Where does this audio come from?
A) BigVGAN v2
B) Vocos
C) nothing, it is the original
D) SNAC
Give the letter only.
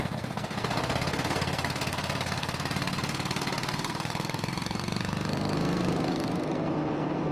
D